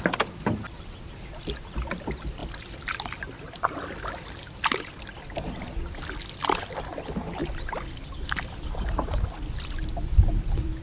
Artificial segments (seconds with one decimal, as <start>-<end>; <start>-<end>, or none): none